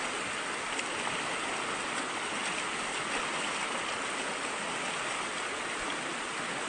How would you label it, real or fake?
real